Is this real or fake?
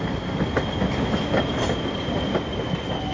real